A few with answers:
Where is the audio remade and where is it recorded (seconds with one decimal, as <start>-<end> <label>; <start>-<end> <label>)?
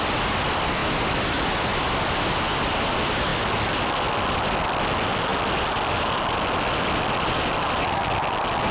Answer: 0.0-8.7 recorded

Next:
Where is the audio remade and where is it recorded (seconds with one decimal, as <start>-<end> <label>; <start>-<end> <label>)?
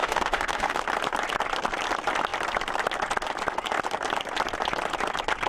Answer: 0.0-0.8 remade; 0.8-5.5 recorded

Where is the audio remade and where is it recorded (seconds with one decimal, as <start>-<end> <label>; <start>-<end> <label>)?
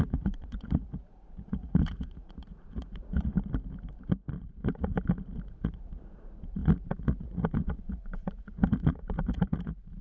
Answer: 0.0-3.3 remade; 3.3-4.4 recorded; 4.4-4.9 remade; 4.9-5.5 recorded; 5.5-10.0 remade